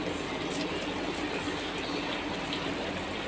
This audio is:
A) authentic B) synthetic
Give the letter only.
A